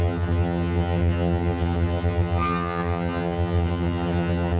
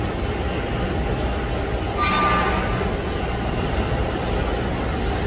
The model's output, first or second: first